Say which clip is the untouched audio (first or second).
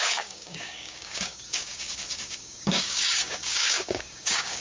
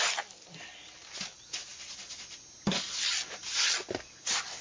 second